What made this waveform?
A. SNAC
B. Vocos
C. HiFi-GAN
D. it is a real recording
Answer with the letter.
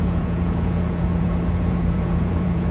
B